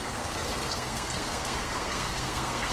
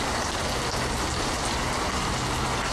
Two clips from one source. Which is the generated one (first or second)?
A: first